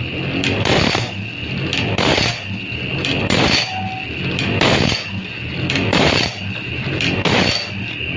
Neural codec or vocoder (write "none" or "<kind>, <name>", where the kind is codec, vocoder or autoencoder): none